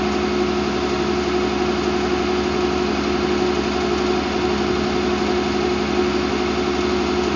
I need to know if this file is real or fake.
real